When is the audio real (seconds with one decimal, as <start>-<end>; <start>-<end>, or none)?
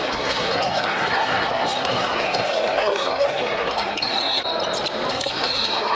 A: 4.4-5.1